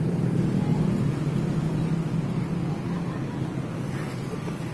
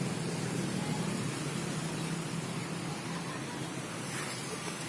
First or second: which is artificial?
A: second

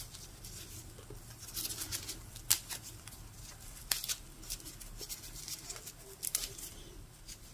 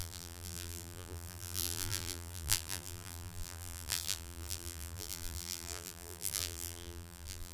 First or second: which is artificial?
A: second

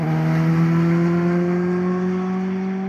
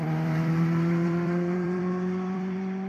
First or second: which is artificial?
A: second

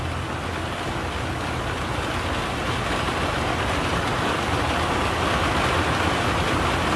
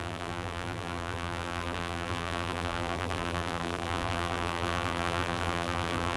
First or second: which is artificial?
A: second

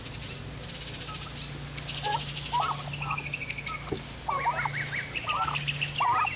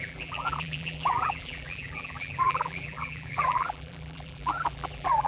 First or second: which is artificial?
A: second